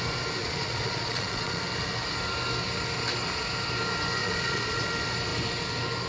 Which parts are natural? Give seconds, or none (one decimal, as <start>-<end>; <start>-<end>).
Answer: 0.0-0.4; 1.6-4.2; 4.8-6.1